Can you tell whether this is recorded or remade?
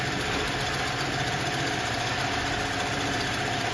recorded